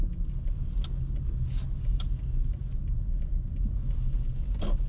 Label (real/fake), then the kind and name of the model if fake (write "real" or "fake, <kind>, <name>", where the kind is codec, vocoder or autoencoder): real